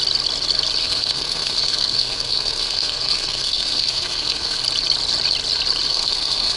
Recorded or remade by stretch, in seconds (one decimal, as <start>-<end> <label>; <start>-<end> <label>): 0.0-0.8 recorded; 0.8-4.6 remade; 4.6-5.9 recorded; 5.9-6.6 remade